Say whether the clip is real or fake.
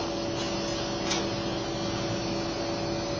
real